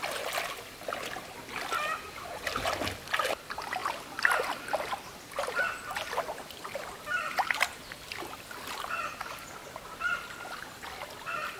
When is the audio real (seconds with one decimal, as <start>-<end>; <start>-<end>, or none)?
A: 0.0-11.6